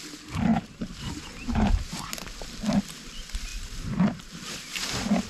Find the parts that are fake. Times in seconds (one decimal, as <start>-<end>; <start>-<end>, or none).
0.5-2.1